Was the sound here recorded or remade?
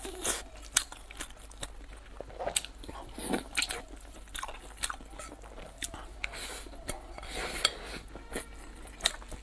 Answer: recorded